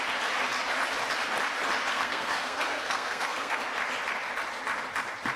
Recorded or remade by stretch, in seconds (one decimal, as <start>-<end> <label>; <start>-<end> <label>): 0.0-1.9 recorded; 1.9-3.6 remade; 3.6-5.4 recorded